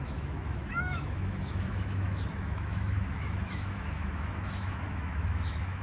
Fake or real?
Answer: fake